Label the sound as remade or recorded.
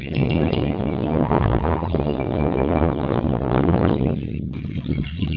remade